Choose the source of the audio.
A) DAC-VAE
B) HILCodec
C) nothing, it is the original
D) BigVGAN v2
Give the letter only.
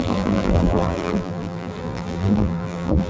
D